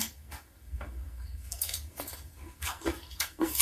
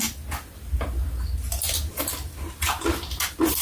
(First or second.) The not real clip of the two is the first